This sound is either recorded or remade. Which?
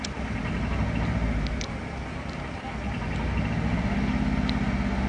recorded